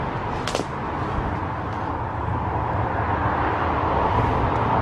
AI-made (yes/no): no